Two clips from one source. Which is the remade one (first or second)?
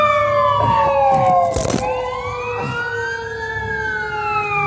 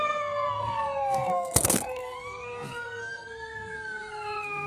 second